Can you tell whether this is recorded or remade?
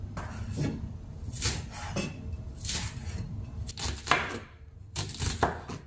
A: recorded